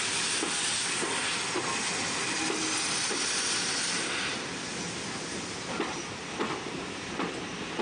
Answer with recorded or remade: recorded